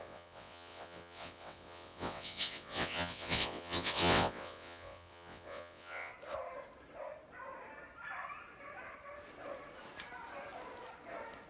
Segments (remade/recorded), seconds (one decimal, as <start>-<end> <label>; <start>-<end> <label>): 0.0-6.1 remade; 6.1-11.5 recorded